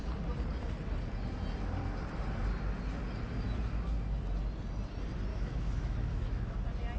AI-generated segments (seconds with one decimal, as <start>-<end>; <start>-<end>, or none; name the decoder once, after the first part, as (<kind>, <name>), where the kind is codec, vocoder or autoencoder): 5.3-6.5 (autoencoder, DAC-VAE)